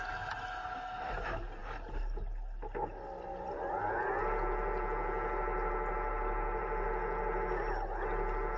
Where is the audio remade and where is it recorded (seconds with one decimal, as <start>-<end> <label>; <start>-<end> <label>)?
0.0-8.6 recorded